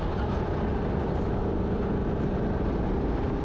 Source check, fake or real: real